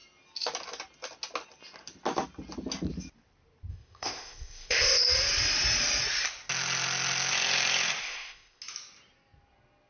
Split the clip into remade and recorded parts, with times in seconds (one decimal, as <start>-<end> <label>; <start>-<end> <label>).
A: 0.0-3.7 recorded; 3.7-5.0 remade; 5.0-8.0 recorded; 8.0-8.6 remade; 8.6-9.9 recorded